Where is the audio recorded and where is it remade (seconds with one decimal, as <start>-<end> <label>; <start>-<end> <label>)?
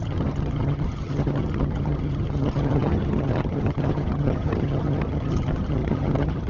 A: 0.0-6.5 remade